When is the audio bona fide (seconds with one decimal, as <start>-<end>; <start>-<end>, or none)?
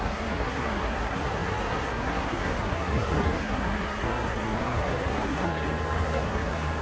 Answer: none